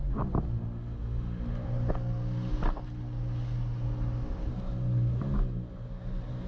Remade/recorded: recorded